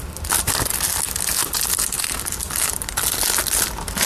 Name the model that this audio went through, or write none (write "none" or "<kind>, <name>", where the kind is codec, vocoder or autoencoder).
none